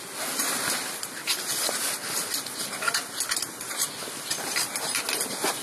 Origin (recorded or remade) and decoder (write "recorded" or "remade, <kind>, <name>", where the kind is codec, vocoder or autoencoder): recorded